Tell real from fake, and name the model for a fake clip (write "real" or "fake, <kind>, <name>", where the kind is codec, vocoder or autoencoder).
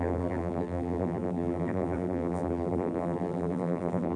fake, vocoder, BigVGAN v2